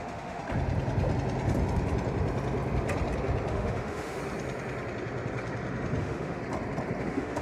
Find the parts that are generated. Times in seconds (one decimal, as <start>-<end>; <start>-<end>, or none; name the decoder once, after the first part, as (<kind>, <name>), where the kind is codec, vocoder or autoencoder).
0.0-0.4 (autoencoder, DAC-VAE); 3.5-4.2; 6.0-6.4; 7.0-7.4